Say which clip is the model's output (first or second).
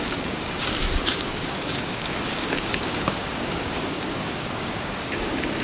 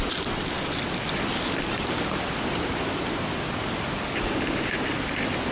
first